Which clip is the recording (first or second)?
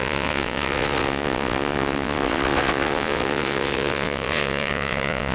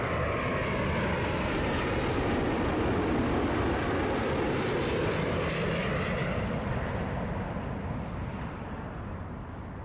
second